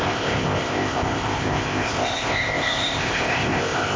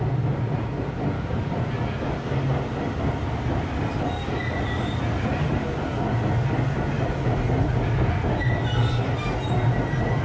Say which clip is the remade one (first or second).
first